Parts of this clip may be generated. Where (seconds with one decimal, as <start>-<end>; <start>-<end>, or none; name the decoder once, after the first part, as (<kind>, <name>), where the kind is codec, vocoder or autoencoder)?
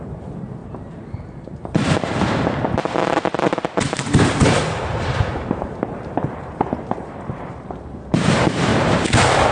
0.0-8.7 (vocoder, BigVGAN v2)